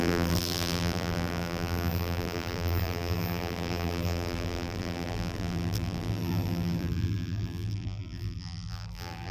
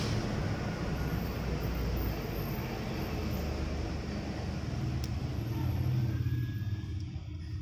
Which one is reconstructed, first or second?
first